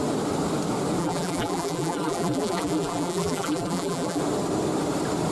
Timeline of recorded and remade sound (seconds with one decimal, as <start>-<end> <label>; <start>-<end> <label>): 0.0-1.0 recorded; 1.0-4.2 remade; 4.2-5.3 recorded